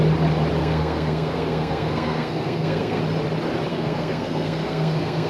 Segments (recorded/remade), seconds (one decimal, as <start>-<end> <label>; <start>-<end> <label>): 0.0-0.6 recorded; 0.6-3.0 remade; 3.0-3.7 recorded; 3.7-5.3 remade